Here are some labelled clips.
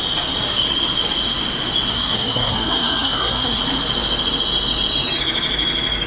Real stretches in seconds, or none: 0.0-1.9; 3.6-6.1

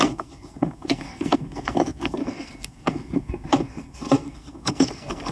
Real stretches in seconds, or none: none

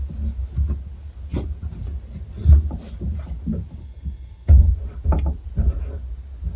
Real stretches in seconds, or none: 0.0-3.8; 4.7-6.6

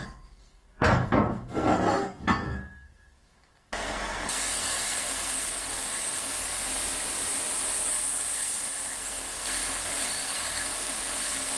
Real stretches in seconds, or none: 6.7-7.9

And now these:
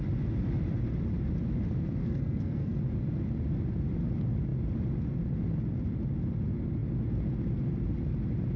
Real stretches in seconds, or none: 0.0-2.0; 2.8-8.6